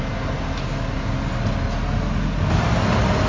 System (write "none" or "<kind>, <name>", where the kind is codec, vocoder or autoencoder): none